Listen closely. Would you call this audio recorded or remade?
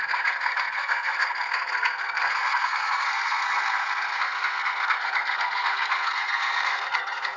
remade